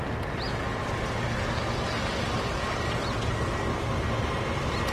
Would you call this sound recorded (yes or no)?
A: yes